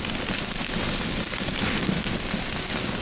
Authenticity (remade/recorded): recorded